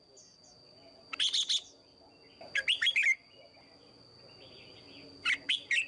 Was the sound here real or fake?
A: real